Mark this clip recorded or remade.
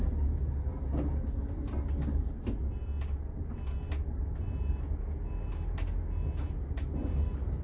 recorded